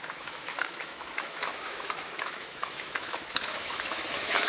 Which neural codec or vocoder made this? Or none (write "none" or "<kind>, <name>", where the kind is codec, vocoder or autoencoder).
autoencoder, DAC-VAE